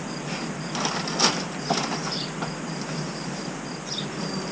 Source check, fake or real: real